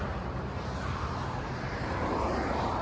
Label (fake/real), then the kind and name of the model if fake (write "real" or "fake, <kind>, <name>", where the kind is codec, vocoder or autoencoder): real